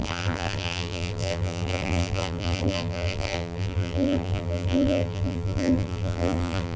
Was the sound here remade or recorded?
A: remade